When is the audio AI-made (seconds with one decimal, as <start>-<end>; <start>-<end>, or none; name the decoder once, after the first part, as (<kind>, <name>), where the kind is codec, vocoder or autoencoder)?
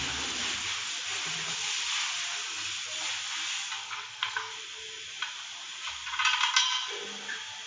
3.8-4.5 (codec, SNAC)